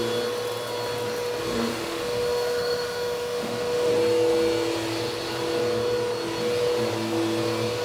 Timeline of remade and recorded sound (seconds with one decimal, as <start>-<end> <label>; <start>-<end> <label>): 0.0-1.7 recorded; 1.7-3.9 remade; 3.9-7.8 recorded